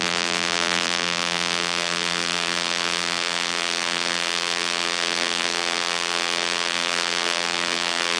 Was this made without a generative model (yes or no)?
no